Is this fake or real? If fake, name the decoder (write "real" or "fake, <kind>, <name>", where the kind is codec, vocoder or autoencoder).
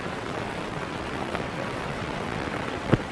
fake, vocoder, WaveNeXt